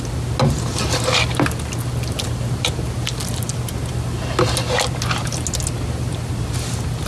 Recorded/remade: recorded